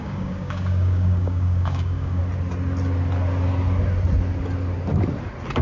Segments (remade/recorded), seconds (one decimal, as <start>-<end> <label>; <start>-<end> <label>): 0.0-2.2 remade; 2.2-5.6 recorded